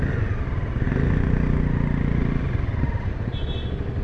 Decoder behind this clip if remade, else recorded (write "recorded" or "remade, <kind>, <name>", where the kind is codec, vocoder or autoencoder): recorded